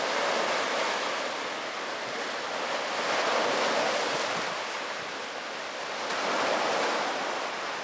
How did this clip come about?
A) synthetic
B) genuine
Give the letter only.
B